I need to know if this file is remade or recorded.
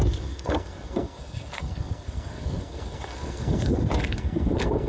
remade